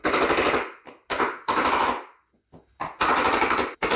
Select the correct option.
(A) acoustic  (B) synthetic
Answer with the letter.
A